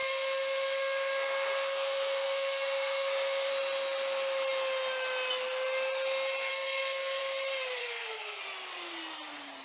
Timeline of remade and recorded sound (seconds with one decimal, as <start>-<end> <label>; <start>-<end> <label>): 0.0-3.5 remade; 3.5-6.5 recorded; 6.5-7.2 remade; 7.2-7.8 recorded; 7.8-8.4 remade; 8.4-9.6 recorded